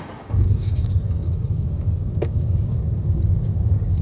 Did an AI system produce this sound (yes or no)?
yes